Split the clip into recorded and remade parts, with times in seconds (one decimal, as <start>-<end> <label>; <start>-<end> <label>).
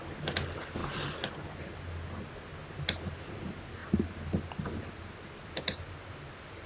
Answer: 0.0-6.7 recorded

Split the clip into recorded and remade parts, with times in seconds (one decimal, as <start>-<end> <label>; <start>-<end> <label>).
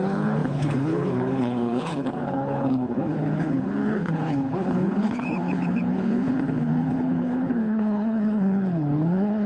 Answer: 0.0-9.5 remade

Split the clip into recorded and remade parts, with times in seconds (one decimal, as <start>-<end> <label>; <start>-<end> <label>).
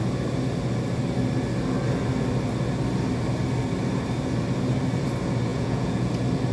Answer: 0.0-5.5 recorded; 5.5-6.1 remade; 6.1-6.5 recorded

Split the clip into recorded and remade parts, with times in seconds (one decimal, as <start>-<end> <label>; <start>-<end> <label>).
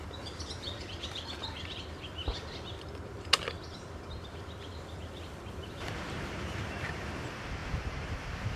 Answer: 0.0-8.6 recorded